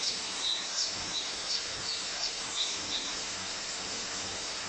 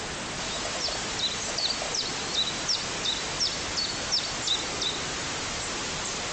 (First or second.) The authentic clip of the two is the second